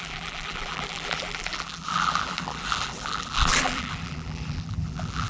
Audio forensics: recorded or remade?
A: remade